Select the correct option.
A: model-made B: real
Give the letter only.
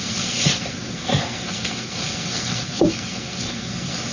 A